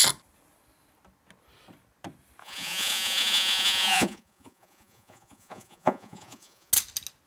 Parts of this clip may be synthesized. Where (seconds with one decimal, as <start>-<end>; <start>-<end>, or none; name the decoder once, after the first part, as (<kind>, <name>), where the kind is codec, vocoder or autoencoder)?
2.4-6.7 (vocoder, Vocos)